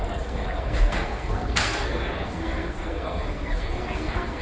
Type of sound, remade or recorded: remade